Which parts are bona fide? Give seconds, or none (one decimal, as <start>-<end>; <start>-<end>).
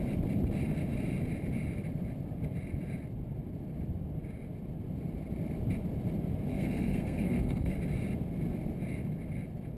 0.0-6.5; 7.8-9.8